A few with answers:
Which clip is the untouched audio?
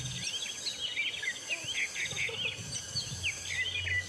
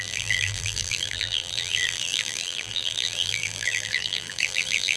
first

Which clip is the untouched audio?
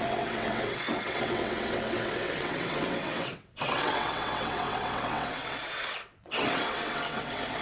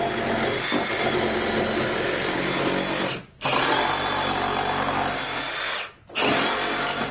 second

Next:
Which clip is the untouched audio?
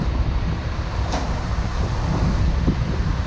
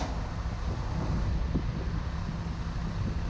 second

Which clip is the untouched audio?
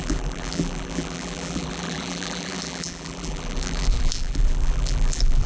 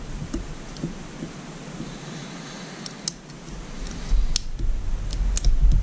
second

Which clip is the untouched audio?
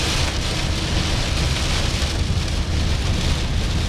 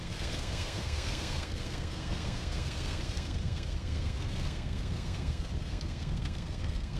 first